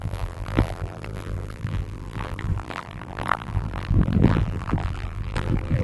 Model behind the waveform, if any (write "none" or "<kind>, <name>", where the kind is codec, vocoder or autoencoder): vocoder, BigVGAN v2